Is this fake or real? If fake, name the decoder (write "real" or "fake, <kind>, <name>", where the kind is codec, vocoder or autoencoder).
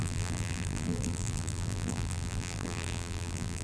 fake, vocoder, BigVGAN v2